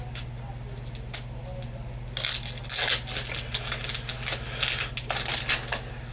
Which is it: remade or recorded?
recorded